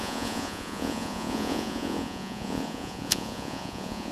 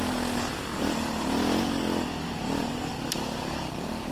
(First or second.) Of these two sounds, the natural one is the second